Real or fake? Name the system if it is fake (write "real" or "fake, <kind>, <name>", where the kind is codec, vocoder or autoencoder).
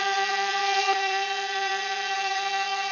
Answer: fake, vocoder, Vocos